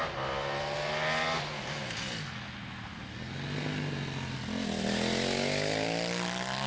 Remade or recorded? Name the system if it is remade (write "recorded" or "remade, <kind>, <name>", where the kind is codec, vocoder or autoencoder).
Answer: recorded